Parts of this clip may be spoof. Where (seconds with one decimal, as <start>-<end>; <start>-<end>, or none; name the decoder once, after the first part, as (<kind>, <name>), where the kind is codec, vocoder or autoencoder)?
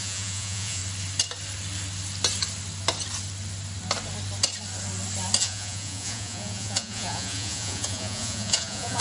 0.0-0.8 (vocoder, Vocos); 5.4-9.0